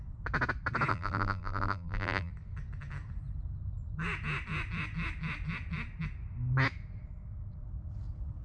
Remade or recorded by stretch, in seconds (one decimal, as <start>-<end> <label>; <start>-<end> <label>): 0.0-0.9 recorded; 0.9-2.3 remade; 2.3-8.4 recorded